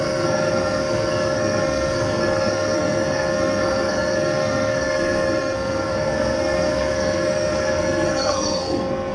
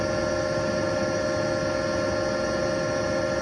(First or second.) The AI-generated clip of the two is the first